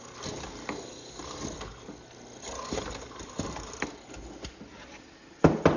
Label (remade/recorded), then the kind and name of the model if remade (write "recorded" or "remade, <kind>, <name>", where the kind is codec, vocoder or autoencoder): recorded